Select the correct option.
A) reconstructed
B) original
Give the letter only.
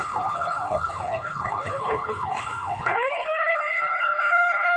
A